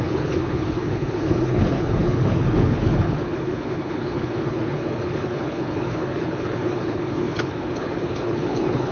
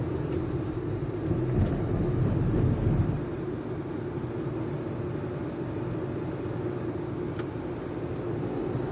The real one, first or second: second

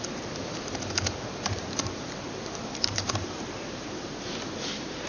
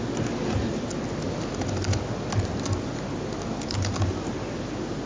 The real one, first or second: second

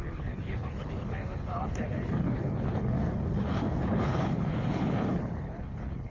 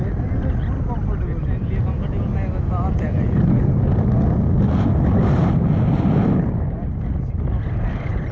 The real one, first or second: second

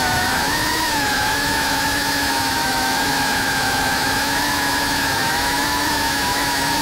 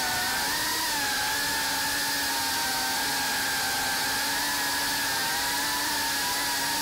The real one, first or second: second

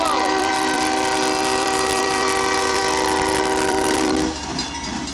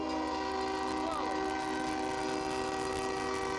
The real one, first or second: second